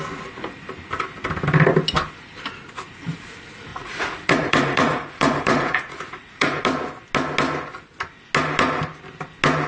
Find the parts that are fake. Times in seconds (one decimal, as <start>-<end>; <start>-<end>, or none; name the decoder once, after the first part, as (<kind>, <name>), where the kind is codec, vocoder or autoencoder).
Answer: 3.7-6.6 (vocoder, Vocos)